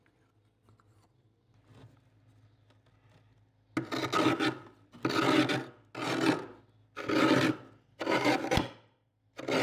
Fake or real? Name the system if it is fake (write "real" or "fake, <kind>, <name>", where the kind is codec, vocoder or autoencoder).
real